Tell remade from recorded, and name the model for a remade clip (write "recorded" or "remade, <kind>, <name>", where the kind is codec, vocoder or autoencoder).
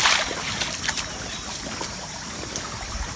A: recorded